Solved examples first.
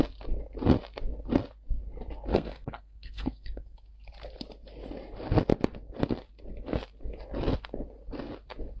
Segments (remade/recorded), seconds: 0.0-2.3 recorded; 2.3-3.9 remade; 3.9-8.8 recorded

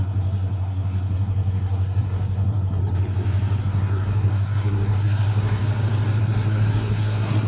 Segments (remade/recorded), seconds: 0.0-2.8 remade; 2.8-3.6 recorded; 3.6-5.6 remade; 5.6-6.2 recorded; 6.2-7.5 remade

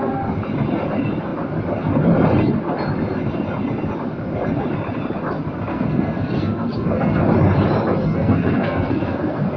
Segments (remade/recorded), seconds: 0.0-5.7 recorded; 5.7-7.2 remade; 7.2-8.0 recorded; 8.0-9.6 remade

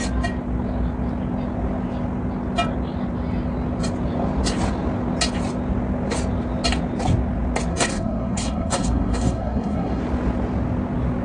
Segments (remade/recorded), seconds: 0.0-7.7 recorded; 7.7-10.0 remade; 10.0-11.2 recorded

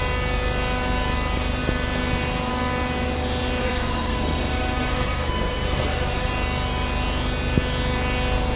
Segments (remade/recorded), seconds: 0.0-3.6 recorded; 3.6-6.3 remade; 6.3-8.6 recorded

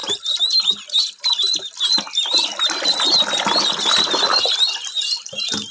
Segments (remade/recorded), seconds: 0.0-5.7 recorded